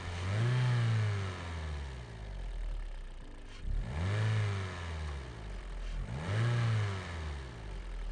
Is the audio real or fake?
real